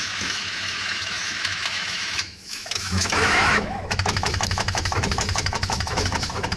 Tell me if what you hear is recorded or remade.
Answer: remade